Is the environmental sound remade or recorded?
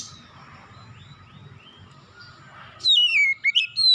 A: recorded